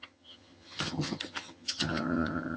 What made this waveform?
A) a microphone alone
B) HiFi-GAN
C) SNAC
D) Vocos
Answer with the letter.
B